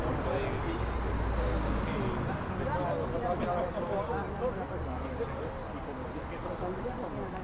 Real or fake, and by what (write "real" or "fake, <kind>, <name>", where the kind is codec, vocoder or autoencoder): real